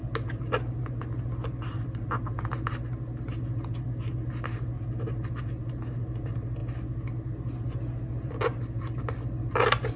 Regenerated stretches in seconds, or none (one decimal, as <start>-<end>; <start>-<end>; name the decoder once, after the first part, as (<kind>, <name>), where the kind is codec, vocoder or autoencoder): none